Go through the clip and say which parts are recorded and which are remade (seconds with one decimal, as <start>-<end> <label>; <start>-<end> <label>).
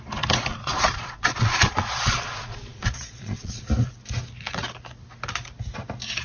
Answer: 0.0-0.5 recorded; 0.5-3.6 remade; 3.6-6.2 recorded